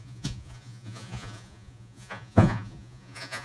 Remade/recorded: remade